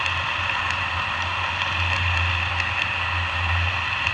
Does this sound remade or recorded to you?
recorded